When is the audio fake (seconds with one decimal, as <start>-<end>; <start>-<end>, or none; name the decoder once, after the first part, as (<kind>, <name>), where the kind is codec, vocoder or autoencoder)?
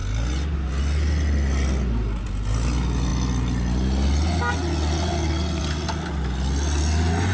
none